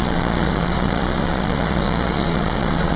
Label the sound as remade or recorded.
remade